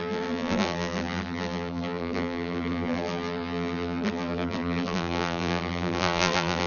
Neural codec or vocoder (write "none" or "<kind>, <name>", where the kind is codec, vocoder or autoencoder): vocoder, BigVGAN v2